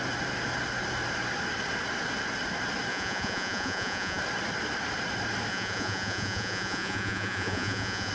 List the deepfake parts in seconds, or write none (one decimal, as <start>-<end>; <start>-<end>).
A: 2.9-4.2; 5.5-8.1